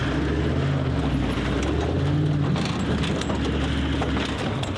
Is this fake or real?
real